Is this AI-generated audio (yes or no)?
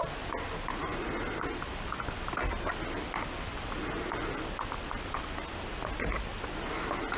no